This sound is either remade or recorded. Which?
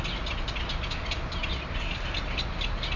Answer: recorded